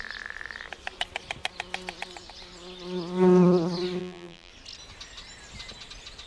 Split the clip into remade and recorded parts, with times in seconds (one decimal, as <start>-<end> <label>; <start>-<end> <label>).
0.0-4.0 recorded; 4.0-4.5 remade; 4.5-6.3 recorded